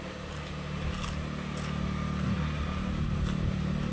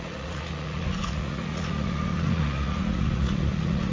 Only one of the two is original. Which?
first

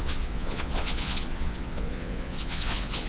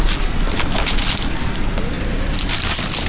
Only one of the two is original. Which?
second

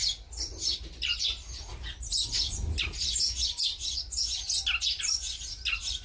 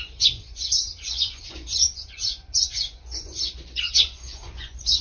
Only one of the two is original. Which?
first